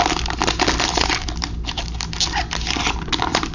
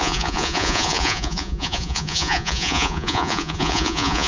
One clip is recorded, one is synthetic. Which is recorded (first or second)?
first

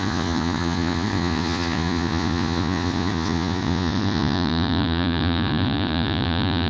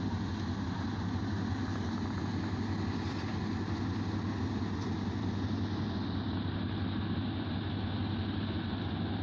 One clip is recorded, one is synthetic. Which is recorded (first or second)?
second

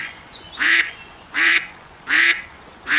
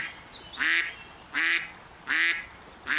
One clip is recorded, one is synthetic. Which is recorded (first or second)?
second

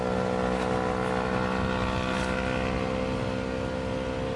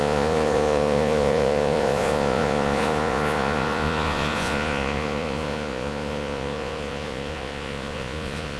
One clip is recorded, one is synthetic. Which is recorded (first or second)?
first